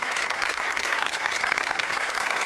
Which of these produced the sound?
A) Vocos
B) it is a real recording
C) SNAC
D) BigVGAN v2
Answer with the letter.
C